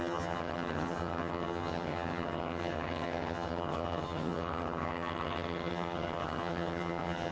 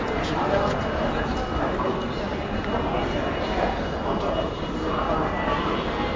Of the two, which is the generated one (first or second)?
first